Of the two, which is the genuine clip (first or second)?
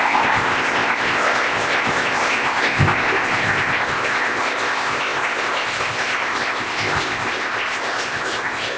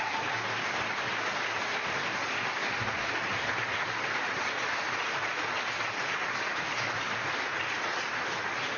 second